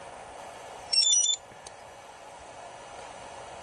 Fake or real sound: fake